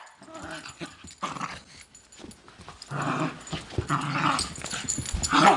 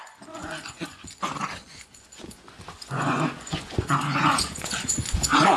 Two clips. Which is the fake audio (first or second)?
second